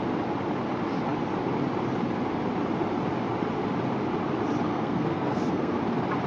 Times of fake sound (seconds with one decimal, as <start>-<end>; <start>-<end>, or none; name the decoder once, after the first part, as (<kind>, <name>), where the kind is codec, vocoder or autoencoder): 4.7-5.8 (codec, SNAC)